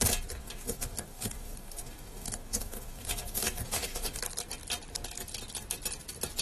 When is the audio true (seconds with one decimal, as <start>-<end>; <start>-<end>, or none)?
0.0-0.4; 4.2-6.4